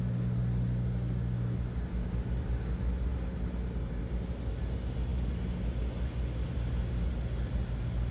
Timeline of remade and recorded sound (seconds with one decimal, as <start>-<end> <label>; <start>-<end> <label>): 0.0-8.1 recorded